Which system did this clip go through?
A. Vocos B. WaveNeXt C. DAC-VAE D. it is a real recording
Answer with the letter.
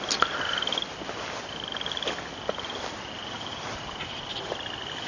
D